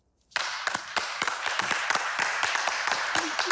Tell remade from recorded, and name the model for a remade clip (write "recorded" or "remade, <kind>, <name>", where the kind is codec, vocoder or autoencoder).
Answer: remade, vocoder, BigVGAN v2